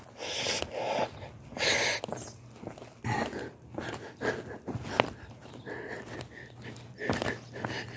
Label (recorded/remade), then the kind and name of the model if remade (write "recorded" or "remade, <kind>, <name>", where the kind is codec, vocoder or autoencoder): recorded